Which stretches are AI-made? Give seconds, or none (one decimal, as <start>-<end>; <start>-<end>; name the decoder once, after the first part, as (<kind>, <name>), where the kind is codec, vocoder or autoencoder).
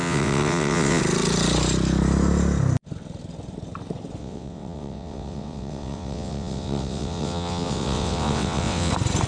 0.0-1.0 (vocoder, WaveNeXt); 4.2-8.9